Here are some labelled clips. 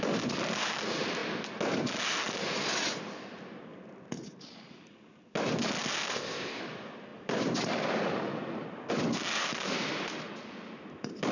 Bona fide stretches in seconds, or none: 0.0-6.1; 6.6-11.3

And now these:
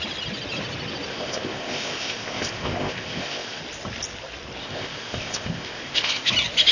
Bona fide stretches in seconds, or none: 0.0-1.1; 3.6-4.6; 6.3-6.7

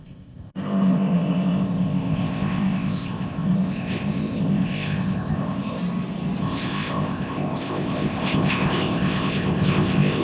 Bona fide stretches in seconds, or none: 5.8-6.4

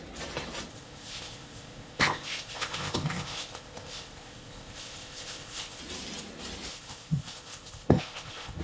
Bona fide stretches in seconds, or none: 0.0-0.7; 5.8-6.7

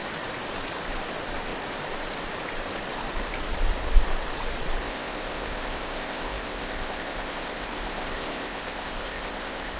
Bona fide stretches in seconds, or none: 0.0-4.8